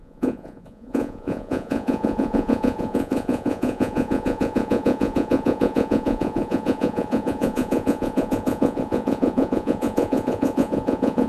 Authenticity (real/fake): fake